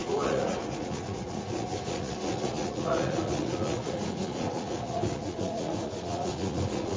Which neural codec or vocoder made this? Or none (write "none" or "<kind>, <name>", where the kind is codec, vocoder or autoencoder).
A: vocoder, Vocos